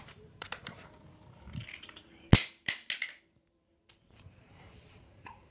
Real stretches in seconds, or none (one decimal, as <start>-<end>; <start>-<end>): 0.6-3.9